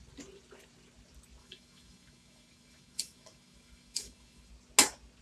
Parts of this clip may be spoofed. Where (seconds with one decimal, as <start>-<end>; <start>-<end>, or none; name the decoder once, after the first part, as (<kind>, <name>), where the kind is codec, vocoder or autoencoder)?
1.4-4.5 (autoencoder, DAC-VAE)